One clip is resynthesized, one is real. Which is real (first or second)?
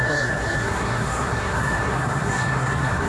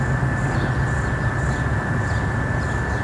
second